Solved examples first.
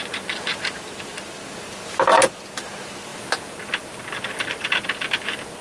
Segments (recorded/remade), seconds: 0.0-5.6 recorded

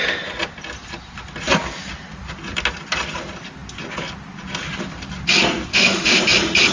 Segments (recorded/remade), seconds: 0.0-5.7 recorded; 5.7-6.2 remade; 6.2-6.7 recorded

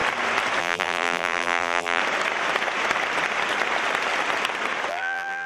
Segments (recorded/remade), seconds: 0.0-0.6 recorded; 0.6-2.0 remade; 2.0-4.9 recorded; 4.9-5.5 remade

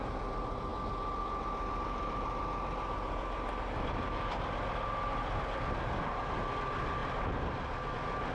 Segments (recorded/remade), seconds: 0.0-8.3 recorded

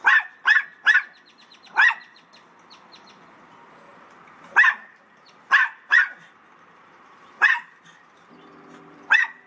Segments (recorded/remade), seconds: 0.0-3.9 recorded; 3.9-9.0 remade; 9.0-9.5 recorded

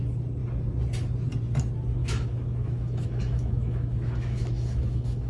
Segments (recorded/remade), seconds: 0.0-2.0 recorded; 2.0-5.3 remade

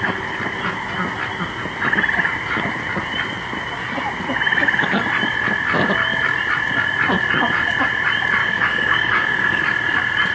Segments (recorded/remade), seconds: 0.0-8.4 recorded; 8.4-9.6 remade; 9.6-10.3 recorded

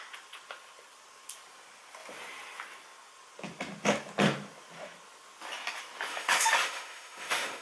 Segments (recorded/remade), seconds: 0.0-6.1 recorded; 6.1-7.6 remade